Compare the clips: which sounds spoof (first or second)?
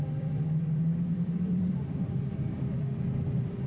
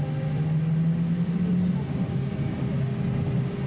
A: first